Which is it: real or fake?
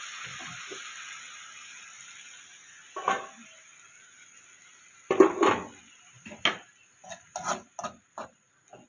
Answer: real